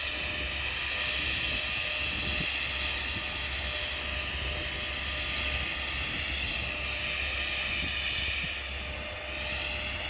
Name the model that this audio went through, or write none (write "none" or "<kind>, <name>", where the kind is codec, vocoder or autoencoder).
none